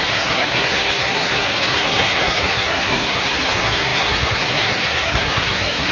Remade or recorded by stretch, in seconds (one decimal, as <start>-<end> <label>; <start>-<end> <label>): 0.0-5.9 remade